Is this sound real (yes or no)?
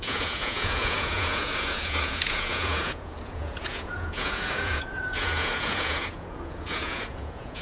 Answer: no